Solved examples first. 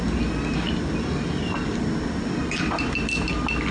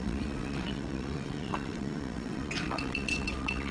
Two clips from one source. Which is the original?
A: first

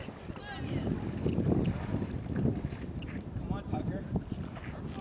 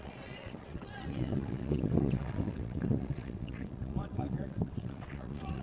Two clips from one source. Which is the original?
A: first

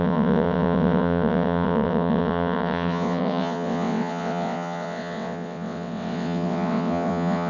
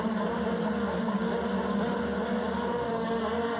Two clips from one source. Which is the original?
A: second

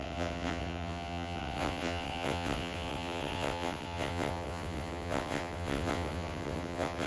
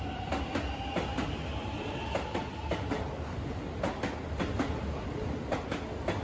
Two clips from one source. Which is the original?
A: second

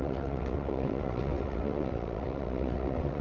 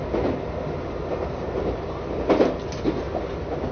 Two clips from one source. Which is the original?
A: second